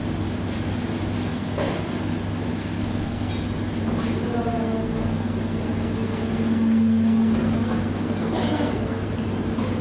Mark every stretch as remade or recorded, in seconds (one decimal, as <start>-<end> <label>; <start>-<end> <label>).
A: 0.0-1.3 recorded; 1.3-2.2 remade; 2.2-2.6 recorded; 2.6-3.3 remade; 3.3-4.6 recorded; 4.6-9.1 remade; 9.1-9.8 recorded

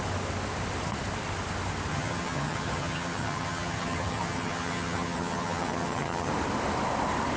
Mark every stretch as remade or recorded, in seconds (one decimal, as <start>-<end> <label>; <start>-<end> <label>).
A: 0.0-1.9 recorded; 1.9-6.3 remade; 6.3-7.4 recorded

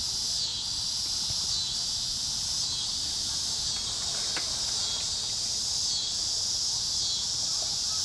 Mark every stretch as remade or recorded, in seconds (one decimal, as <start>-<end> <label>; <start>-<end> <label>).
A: 0.0-8.0 recorded

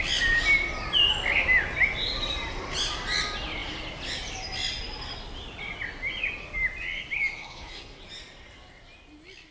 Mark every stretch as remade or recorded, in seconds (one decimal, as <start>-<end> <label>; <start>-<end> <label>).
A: 0.0-7.4 recorded; 7.4-8.0 remade; 8.0-9.5 recorded

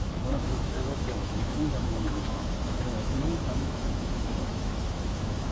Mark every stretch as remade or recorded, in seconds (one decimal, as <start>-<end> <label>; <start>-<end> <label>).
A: 0.0-5.5 remade

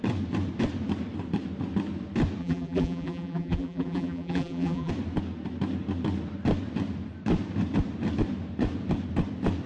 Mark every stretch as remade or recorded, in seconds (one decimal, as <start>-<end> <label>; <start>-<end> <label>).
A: 0.0-2.4 recorded; 2.4-4.9 remade; 4.9-9.7 recorded

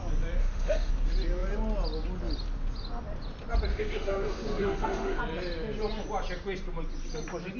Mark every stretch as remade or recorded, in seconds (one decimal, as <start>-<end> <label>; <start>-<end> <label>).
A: 0.0-0.4 recorded; 0.4-0.9 remade; 0.9-3.7 recorded; 3.7-5.2 remade; 5.2-7.6 recorded